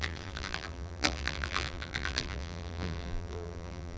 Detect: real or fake fake